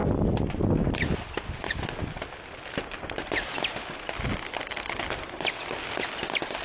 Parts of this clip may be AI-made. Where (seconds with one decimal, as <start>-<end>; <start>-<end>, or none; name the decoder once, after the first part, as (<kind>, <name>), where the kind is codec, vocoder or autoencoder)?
none